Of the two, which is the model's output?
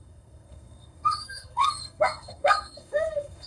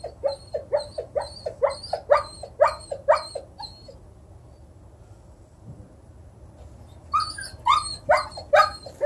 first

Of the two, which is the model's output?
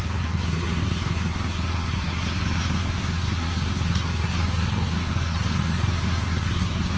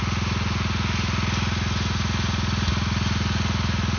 first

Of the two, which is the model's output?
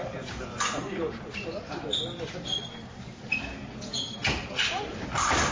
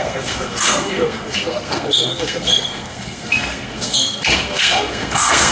second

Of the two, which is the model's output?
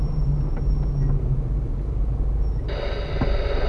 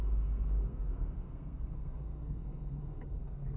second